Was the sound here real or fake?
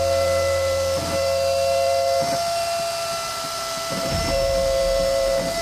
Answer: real